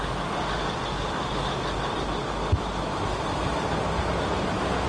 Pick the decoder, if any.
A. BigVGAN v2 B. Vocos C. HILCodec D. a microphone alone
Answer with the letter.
D